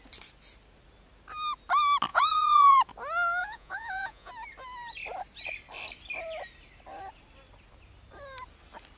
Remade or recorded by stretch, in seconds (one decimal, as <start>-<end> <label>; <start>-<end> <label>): 0.0-2.1 recorded; 2.1-2.8 remade; 2.8-3.4 recorded; 3.4-4.3 remade; 4.3-9.0 recorded